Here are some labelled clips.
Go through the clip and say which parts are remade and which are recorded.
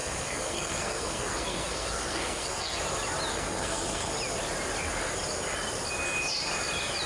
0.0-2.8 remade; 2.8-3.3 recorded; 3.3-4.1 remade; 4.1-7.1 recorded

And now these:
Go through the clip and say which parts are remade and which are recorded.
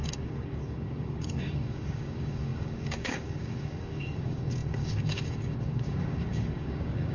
0.0-7.1 remade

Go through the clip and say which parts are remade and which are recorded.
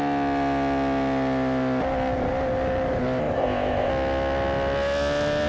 0.0-3.2 recorded; 3.2-3.9 remade; 3.9-5.5 recorded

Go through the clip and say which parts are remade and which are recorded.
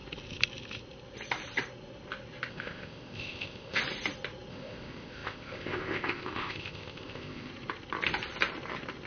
0.0-2.5 recorded; 2.5-3.8 remade; 3.8-4.5 recorded; 4.5-7.5 remade; 7.5-9.1 recorded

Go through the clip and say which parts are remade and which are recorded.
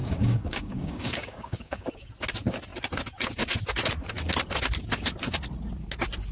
0.0-2.1 remade; 2.1-6.3 recorded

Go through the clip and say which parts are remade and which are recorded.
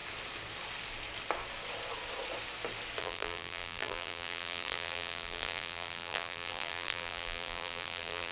0.0-3.0 recorded; 3.0-8.3 remade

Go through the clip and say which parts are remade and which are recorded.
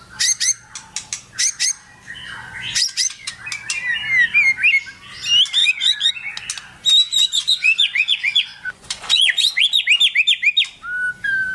0.0-2.4 recorded; 2.4-3.3 remade; 3.3-5.6 recorded; 5.6-6.1 remade; 6.1-7.1 recorded; 7.1-9.8 remade; 9.8-11.5 recorded